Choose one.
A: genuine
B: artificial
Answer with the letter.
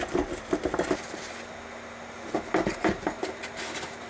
A